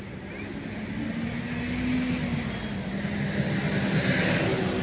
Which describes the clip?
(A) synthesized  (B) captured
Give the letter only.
B